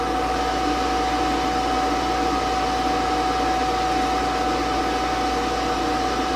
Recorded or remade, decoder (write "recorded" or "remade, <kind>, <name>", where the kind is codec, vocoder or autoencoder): recorded